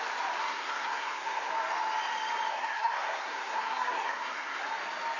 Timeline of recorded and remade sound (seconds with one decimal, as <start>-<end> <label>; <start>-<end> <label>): 0.0-0.4 recorded; 0.4-1.5 remade; 1.5-2.5 recorded; 2.5-4.6 remade; 4.6-5.2 recorded